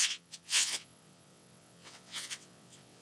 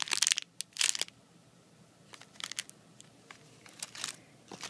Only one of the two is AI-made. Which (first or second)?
first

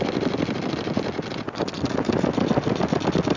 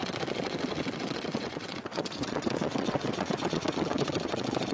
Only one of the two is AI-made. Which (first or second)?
second